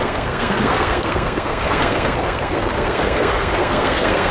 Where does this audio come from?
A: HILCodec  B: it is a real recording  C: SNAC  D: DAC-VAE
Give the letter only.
C